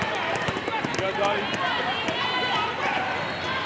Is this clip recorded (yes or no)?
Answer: yes